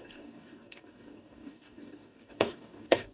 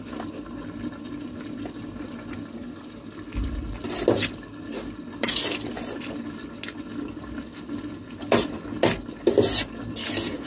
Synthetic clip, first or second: first